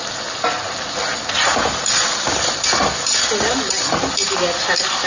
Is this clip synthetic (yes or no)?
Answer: no